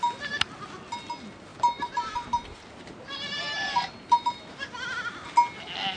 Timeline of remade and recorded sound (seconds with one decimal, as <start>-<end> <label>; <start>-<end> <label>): 0.0-1.5 recorded; 1.5-4.5 remade; 4.5-6.0 recorded